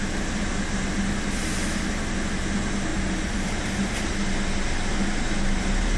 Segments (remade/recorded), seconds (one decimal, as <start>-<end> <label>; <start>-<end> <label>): 0.0-2.9 recorded; 2.9-3.6 remade; 3.6-6.0 recorded